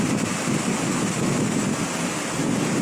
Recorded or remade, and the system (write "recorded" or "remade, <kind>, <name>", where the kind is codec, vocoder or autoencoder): recorded